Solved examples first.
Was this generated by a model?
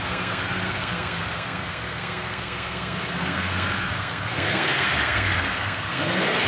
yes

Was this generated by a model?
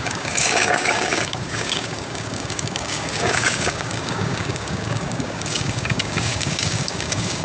yes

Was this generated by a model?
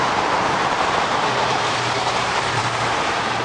yes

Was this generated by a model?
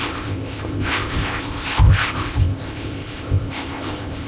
yes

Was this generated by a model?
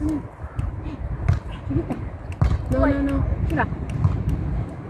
no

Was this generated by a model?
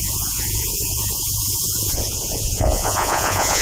yes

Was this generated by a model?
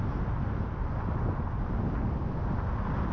no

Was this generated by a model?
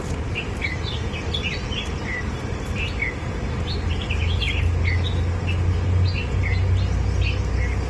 no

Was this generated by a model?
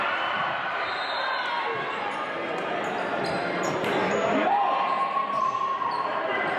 yes